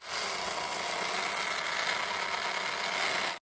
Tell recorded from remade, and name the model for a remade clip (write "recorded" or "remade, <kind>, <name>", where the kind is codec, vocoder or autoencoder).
recorded